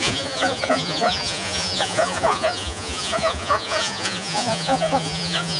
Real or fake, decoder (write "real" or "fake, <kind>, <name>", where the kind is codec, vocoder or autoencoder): fake, vocoder, Vocos